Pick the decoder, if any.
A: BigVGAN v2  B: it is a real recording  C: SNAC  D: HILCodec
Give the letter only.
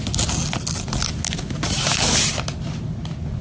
B